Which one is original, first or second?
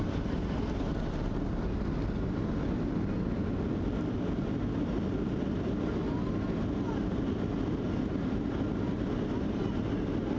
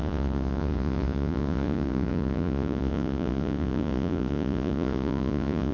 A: first